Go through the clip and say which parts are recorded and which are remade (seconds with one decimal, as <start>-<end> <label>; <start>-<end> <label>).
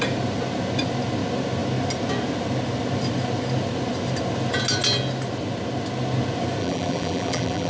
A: 0.0-6.6 recorded; 6.6-7.7 remade